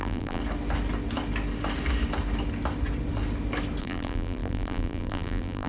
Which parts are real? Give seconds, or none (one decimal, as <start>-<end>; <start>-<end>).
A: 0.4-3.8

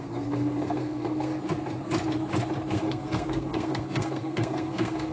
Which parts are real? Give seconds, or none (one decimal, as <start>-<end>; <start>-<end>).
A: 1.3-2.7

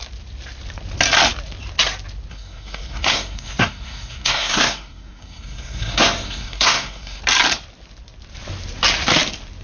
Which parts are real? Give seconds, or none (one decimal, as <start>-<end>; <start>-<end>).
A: 0.0-2.3; 7.2-9.6

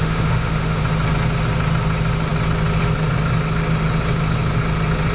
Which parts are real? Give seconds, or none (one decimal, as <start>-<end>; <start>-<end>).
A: 0.8-5.1

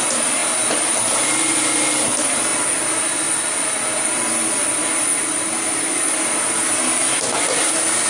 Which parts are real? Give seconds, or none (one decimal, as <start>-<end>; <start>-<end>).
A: 0.0-8.1

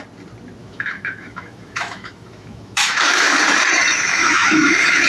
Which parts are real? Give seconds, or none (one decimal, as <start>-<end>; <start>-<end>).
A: 0.0-0.6; 3.4-4.1